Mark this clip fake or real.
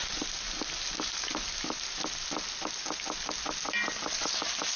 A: real